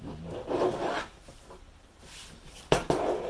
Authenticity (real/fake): real